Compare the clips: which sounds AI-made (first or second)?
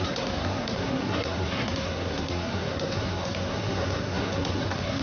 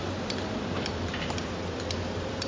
first